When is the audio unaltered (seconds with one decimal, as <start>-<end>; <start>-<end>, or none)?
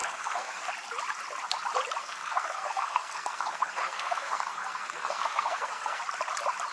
0.7-2.0; 6.0-6.7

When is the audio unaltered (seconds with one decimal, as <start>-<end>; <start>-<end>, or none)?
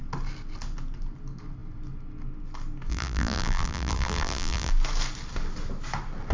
0.0-2.9; 4.7-6.3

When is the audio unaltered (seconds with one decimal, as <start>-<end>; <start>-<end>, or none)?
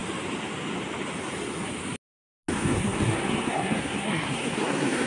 0.0-2.5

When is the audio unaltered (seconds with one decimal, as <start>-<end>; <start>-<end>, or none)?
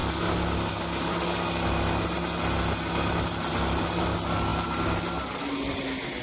0.0-6.2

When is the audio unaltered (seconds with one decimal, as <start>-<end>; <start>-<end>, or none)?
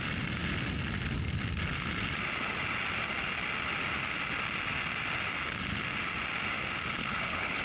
0.0-7.0